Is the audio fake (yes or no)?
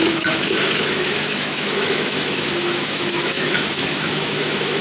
yes